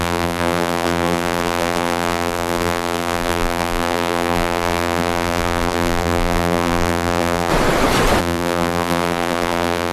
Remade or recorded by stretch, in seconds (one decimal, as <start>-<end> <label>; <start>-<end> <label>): 0.0-7.5 remade; 7.5-8.2 recorded; 8.2-9.9 remade